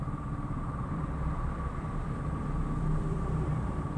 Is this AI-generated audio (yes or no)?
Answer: yes